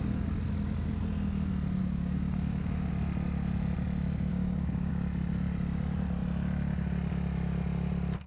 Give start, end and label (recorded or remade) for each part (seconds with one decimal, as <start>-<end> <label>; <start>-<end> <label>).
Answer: 0.0-1.8 recorded; 1.8-2.9 remade; 2.9-4.3 recorded; 4.3-4.9 remade; 4.9-8.3 recorded